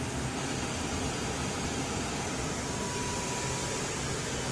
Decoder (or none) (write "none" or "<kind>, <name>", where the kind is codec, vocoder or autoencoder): none